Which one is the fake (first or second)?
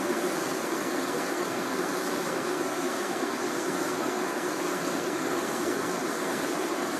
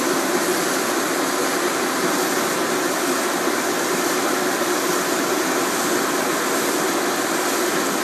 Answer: first